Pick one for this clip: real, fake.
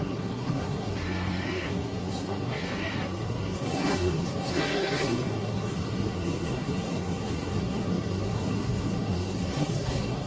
fake